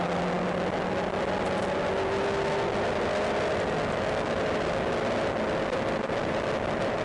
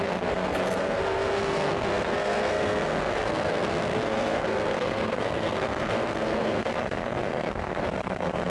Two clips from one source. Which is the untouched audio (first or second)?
first